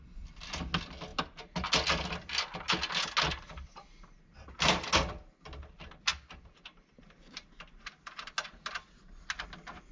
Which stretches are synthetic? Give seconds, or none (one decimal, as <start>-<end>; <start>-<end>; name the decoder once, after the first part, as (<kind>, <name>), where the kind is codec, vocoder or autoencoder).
none